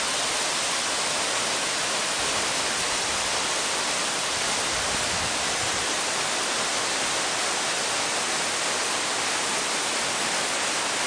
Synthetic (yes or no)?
no